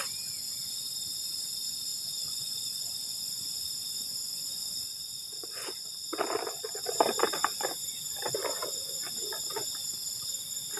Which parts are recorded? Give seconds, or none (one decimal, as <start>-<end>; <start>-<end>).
0.0-1.9; 5.9-10.8